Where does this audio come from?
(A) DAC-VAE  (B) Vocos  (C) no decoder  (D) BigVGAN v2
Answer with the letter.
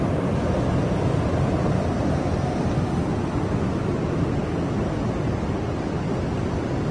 C